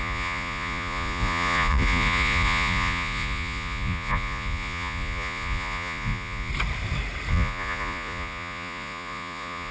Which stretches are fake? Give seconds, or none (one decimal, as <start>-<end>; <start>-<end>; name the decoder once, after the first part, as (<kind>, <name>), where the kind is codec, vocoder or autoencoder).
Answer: 0.0-6.5 (vocoder, Vocos); 7.3-9.7